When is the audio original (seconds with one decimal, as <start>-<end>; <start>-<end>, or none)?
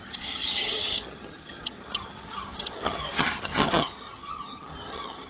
none